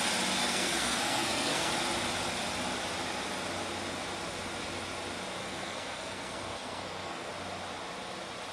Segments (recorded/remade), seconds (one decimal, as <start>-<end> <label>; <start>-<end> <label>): 0.0-0.4 recorded; 0.4-1.7 remade; 1.7-5.4 recorded; 5.4-7.3 remade; 7.3-8.5 recorded